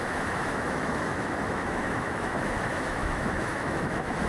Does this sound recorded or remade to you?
remade